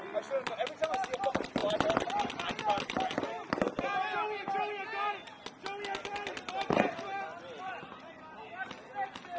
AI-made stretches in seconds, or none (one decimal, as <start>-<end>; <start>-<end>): none